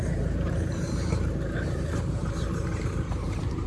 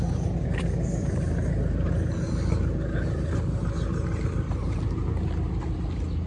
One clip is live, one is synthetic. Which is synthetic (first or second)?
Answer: first